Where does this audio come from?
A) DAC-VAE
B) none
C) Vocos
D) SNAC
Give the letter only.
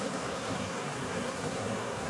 D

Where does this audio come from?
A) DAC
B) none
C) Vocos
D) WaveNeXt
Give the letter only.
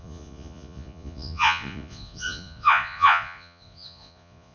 C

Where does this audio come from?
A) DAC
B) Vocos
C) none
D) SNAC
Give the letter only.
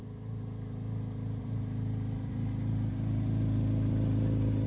C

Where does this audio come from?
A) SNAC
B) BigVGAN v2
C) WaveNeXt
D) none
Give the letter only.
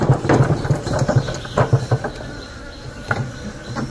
B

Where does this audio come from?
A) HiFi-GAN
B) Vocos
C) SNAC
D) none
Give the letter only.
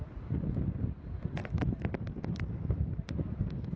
D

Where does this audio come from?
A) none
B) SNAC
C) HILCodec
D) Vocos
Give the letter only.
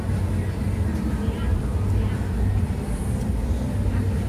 A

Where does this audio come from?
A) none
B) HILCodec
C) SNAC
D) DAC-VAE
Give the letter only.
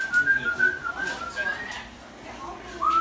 A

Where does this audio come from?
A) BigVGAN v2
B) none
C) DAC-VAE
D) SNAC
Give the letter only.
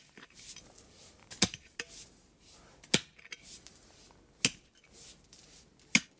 B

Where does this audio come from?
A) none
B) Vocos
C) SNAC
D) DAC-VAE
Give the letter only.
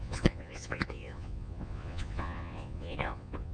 B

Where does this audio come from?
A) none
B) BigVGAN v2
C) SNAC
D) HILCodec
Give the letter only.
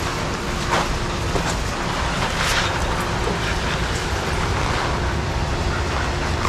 A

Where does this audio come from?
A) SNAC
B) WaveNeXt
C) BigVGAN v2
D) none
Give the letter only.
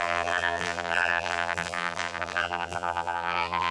C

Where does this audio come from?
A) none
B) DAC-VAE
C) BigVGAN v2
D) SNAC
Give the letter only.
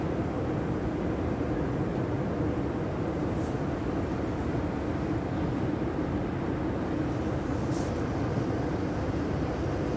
A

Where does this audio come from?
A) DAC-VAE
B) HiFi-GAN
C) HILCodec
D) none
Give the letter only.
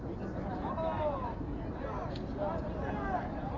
D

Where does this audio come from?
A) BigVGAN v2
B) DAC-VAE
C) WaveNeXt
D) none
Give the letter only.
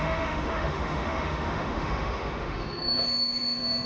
B